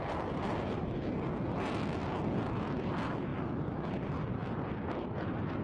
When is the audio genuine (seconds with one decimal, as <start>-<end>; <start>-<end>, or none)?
0.0-2.0; 2.9-5.6